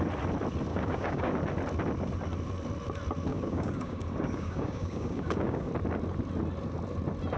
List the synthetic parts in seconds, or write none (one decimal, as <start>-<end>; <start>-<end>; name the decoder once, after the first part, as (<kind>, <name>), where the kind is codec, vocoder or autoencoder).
0.7-1.3 (codec, DAC); 3.3-5.7